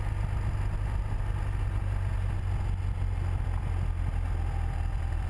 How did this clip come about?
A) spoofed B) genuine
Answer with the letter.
B